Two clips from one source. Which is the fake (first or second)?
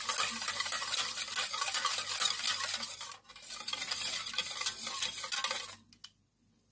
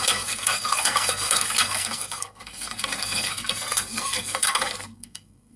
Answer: second